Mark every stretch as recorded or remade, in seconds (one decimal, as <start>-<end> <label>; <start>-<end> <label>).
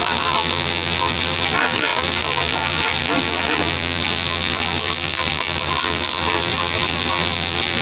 0.0-7.8 remade